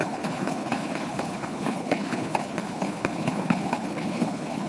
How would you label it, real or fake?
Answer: fake